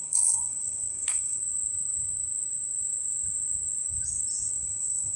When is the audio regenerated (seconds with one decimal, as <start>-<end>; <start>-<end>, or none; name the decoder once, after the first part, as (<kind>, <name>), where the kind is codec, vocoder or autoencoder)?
0.0-1.4 (codec, SNAC); 4.5-5.2